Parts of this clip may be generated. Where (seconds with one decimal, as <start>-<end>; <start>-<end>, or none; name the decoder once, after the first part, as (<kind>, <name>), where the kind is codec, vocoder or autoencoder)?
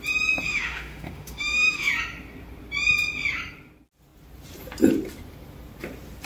0.5-1.9 (autoencoder, DAC-VAE)